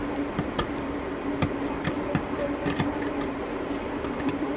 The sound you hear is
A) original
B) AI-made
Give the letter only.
B